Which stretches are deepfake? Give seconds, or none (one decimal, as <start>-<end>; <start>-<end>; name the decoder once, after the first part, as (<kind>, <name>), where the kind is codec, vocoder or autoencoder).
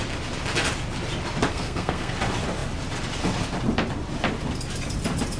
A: 1.5-2.1 (codec, SNAC)